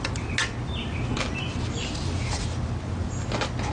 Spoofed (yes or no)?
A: no